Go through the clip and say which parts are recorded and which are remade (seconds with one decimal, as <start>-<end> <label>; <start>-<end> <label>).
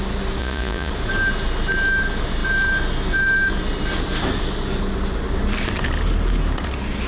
0.0-0.4 recorded; 0.4-0.9 remade; 0.9-7.1 recorded